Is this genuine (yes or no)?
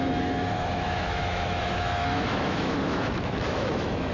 no